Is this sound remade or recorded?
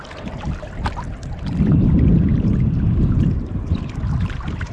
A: recorded